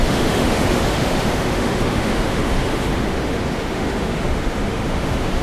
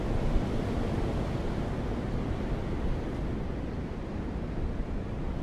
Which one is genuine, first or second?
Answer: second